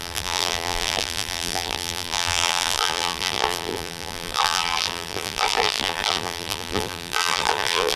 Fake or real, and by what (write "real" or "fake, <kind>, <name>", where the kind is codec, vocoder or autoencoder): fake, vocoder, BigVGAN v2